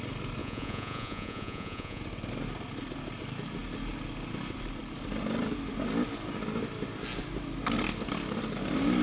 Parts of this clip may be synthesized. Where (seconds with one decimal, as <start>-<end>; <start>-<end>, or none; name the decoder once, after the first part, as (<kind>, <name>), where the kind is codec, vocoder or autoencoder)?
0.4-2.0 (vocoder, Vocos)